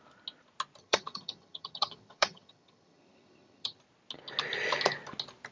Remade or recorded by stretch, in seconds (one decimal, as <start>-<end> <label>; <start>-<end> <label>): 0.0-0.8 recorded; 0.8-3.8 remade; 3.8-5.5 recorded